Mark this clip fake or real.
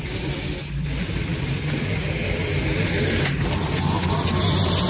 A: real